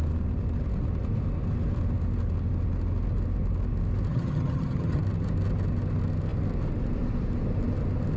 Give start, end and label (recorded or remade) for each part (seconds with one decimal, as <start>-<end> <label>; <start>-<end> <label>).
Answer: 0.0-4.1 recorded; 4.1-5.0 remade; 5.0-8.2 recorded